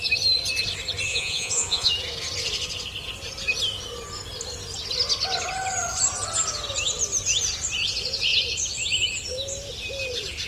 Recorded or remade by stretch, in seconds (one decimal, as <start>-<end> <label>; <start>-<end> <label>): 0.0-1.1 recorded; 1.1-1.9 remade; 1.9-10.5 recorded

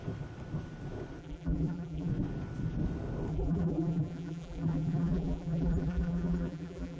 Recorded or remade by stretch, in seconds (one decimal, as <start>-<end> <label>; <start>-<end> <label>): 0.0-1.2 recorded; 1.2-2.1 remade; 2.1-3.3 recorded; 3.3-7.0 remade

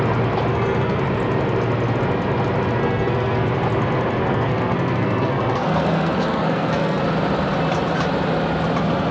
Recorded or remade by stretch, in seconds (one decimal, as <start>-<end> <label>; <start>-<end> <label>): 0.0-0.5 recorded; 0.5-1.0 remade; 1.0-2.8 recorded; 2.8-3.5 remade; 3.5-4.2 recorded; 4.2-7.0 remade; 7.0-9.1 recorded

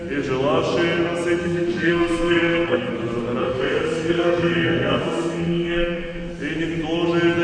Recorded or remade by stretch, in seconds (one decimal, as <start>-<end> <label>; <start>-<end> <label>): 0.0-1.4 recorded; 1.4-2.9 remade; 2.9-3.4 recorded; 3.4-6.3 remade; 6.3-7.4 recorded

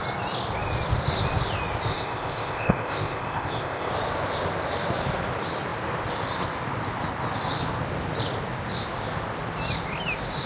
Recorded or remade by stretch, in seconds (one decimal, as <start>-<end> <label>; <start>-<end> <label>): 0.0-1.9 recorded; 1.9-3.9 remade; 3.9-10.5 recorded